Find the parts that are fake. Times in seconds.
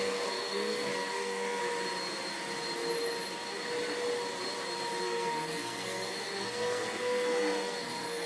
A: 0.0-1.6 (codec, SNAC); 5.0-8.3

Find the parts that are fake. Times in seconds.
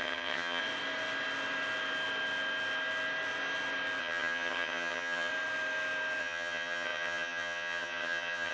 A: 0.0-0.6 (vocoder, HiFi-GAN); 4.0-5.3; 6.2-8.5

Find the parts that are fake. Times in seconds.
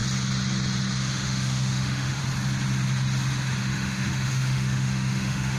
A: 1.0-2.2 (autoencoder, DAC-VAE); 3.6-5.6